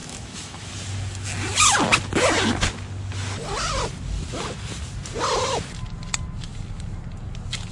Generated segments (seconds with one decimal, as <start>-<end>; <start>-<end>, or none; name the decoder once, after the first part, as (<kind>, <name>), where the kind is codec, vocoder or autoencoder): 0.0-0.7 (autoencoder, DAC-VAE)